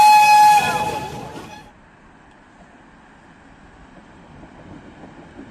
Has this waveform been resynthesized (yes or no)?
no